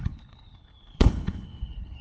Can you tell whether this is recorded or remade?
remade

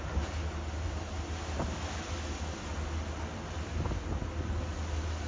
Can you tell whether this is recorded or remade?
recorded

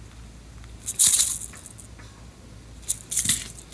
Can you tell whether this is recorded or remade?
recorded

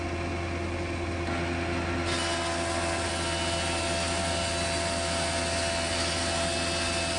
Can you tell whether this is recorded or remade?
recorded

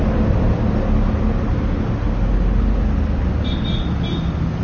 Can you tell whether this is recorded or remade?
recorded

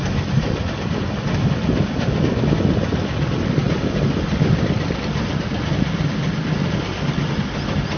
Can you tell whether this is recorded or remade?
recorded